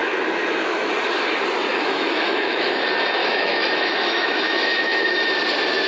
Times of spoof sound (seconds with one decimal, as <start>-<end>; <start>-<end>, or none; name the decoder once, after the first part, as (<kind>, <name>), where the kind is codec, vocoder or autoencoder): 0.0-0.9 (autoencoder, DAC-VAE); 1.7-2.7; 3.2-5.1